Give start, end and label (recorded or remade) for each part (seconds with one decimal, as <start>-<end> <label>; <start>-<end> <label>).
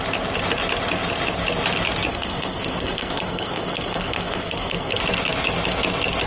0.0-2.1 recorded; 2.1-5.0 remade; 5.0-6.3 recorded